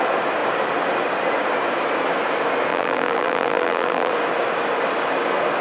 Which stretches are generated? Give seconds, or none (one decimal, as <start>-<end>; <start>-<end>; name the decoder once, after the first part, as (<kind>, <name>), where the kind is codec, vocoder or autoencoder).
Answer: 2.7-4.1 (vocoder, BigVGAN v2)